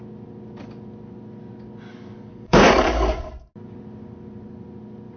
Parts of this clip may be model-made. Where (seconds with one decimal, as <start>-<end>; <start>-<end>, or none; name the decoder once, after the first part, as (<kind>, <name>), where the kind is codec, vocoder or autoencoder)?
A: 1.9-3.3 (codec, DAC)